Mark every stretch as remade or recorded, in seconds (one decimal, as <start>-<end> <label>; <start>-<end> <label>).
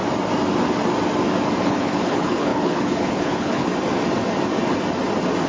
0.0-1.6 recorded; 1.6-3.7 remade; 3.7-5.5 recorded